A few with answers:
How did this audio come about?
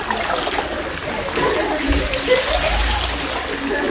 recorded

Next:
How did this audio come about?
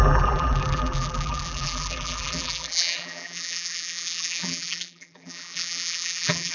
remade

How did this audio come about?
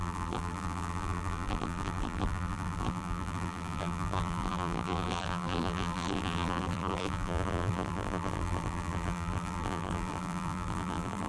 remade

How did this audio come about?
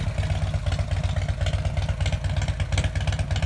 recorded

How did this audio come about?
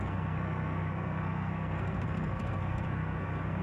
remade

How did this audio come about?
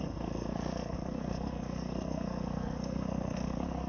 remade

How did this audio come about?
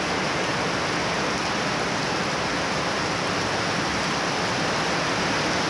recorded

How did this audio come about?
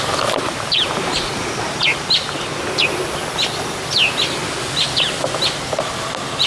recorded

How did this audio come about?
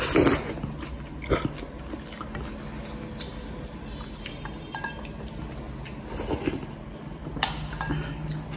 recorded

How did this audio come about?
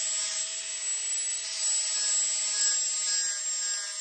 recorded